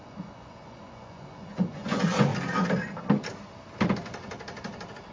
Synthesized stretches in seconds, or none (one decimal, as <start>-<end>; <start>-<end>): 0.0-2.3